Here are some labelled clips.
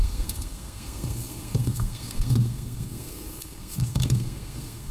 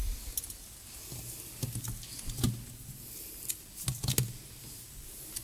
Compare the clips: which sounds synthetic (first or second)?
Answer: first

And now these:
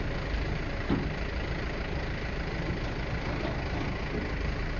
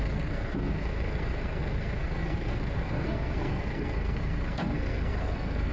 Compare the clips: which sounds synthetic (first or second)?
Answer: second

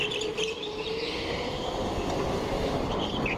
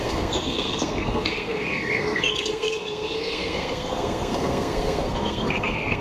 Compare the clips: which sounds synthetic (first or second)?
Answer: second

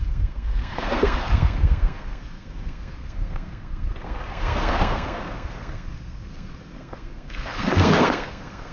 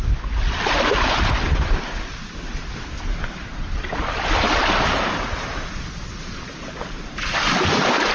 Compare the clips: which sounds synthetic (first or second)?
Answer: first